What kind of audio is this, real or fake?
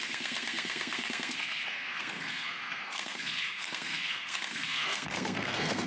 fake